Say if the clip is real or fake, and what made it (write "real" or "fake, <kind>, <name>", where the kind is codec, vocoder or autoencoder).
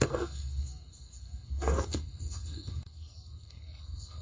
fake, codec, SNAC